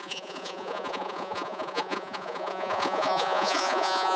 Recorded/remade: remade